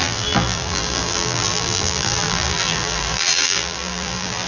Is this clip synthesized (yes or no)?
yes